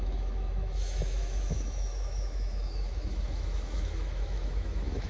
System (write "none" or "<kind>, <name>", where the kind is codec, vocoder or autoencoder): autoencoder, DAC-VAE